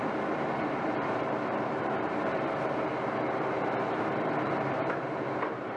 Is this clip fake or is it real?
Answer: fake